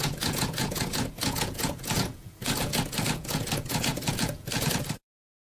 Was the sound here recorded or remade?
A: remade